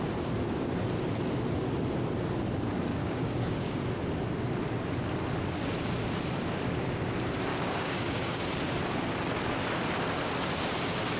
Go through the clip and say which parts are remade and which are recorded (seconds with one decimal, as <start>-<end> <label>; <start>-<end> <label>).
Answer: 0.0-2.9 recorded; 2.9-3.8 remade; 3.8-7.5 recorded; 7.5-8.4 remade; 8.4-11.2 recorded